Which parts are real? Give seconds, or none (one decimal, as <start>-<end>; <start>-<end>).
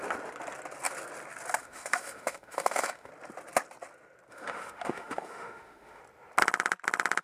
0.0-1.6; 3.1-4.3; 6.0-7.2